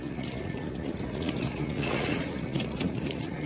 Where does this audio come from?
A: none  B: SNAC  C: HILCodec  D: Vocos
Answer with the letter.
D